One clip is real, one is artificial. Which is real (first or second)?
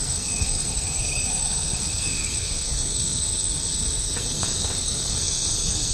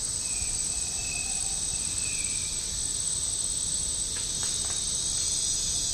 second